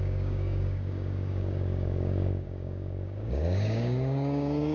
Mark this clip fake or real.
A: fake